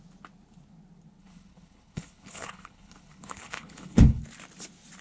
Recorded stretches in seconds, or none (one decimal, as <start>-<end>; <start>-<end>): 0.0-1.2; 4.2-5.0